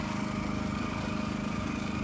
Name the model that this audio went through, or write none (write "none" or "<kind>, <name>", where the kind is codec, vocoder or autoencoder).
codec, DAC